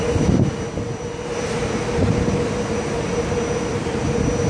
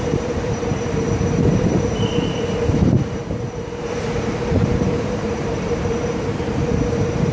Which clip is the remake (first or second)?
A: second